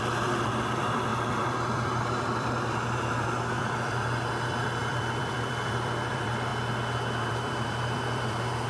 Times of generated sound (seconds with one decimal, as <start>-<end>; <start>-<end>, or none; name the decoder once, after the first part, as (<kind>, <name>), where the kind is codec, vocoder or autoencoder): 0.0-6.5 (vocoder, BigVGAN v2); 7.2-8.7